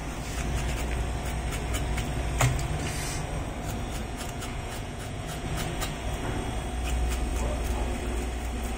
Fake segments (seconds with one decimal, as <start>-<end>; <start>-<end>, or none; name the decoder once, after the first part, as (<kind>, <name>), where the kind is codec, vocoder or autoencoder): 4.0-6.0 (vocoder, Vocos)